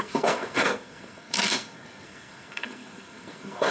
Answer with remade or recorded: remade